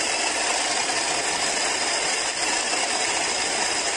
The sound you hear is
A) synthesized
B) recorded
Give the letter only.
B